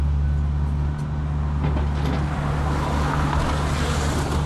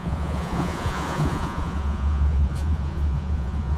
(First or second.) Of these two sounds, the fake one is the second